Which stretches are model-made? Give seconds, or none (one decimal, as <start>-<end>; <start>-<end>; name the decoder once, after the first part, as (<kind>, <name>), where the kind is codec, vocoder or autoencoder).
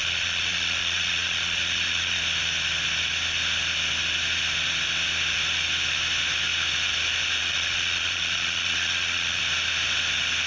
0.0-2.2 (vocoder, Vocos); 7.4-9.4